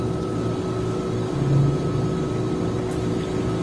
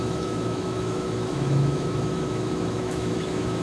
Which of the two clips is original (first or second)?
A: first